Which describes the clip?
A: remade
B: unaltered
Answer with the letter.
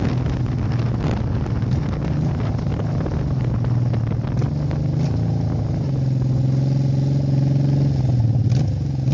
B